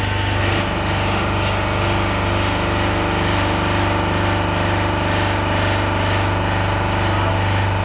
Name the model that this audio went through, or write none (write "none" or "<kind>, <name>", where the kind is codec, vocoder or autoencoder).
none